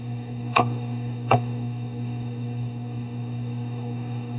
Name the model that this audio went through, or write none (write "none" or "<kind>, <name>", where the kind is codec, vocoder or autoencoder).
codec, DAC